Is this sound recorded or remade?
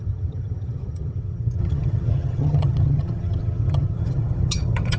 remade